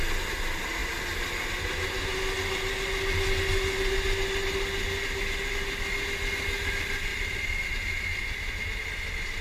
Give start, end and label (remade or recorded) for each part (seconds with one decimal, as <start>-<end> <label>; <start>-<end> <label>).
0.0-7.1 recorded; 7.1-7.7 remade; 7.7-9.4 recorded